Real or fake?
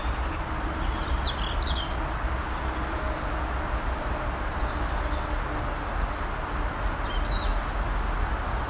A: real